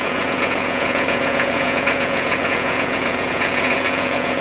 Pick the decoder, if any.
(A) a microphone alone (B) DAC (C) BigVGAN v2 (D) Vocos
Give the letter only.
D